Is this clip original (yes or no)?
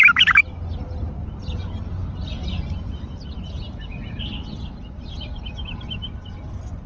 yes